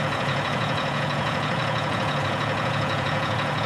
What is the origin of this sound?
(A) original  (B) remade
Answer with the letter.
B